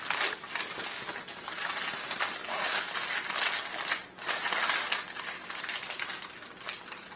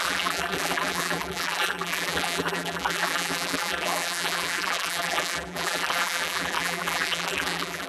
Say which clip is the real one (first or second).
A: first